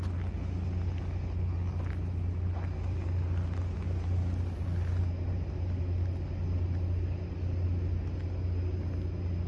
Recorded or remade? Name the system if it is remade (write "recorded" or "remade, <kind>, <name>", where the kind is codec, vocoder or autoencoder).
recorded